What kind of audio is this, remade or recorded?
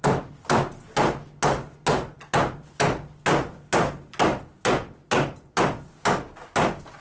recorded